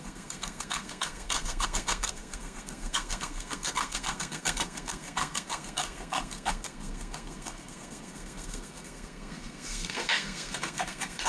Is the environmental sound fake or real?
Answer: fake